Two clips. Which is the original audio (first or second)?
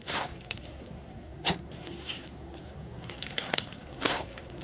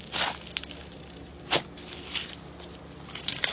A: second